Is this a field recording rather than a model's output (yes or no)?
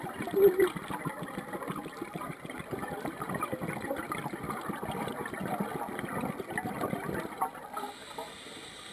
yes